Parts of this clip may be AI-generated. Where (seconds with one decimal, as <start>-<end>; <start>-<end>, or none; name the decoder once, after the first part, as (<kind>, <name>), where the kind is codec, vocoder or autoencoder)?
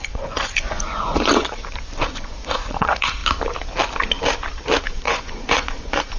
0.0-1.6 (vocoder, Vocos); 2.1-3.2; 4.8-6.2